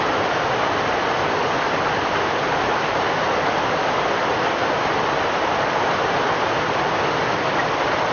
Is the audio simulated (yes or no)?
no